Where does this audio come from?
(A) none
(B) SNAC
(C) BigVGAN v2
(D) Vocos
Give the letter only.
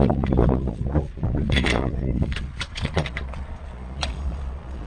D